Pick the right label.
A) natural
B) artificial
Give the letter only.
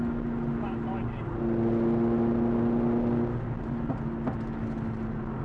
A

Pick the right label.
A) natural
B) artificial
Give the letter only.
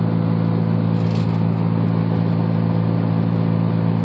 A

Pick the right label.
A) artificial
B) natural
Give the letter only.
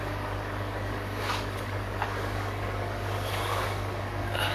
A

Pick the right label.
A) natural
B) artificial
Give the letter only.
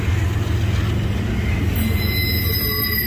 A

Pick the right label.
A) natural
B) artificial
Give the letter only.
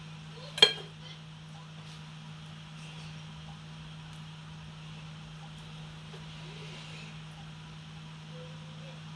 A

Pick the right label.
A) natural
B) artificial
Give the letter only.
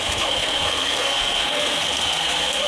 B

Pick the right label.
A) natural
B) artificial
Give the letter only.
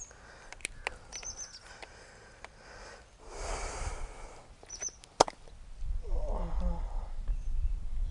A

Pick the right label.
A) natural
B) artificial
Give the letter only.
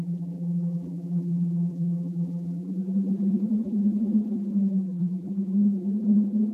B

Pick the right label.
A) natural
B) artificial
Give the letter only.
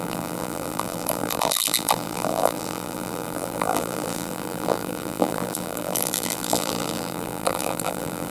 B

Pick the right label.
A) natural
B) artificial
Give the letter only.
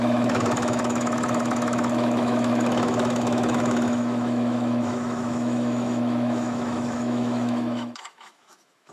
B